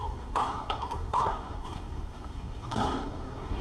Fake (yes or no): yes